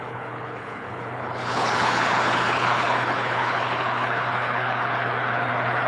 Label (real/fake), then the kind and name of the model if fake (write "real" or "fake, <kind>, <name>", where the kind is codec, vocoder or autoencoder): fake, codec, HILCodec